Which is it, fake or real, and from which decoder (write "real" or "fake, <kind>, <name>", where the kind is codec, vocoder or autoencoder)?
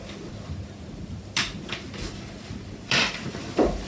real